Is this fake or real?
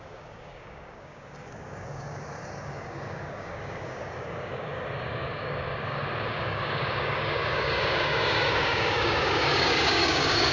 fake